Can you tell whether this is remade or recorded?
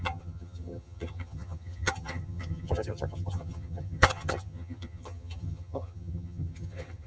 remade